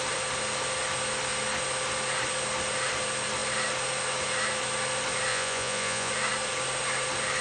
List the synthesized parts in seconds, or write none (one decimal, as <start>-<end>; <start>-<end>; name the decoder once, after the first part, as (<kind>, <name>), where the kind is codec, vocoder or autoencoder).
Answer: 5.3-6.1 (vocoder, Vocos)